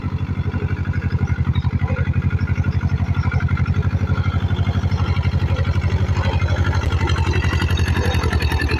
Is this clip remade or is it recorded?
recorded